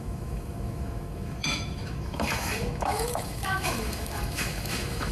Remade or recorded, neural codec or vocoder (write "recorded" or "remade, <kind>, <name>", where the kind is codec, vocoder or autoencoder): remade, autoencoder, DAC-VAE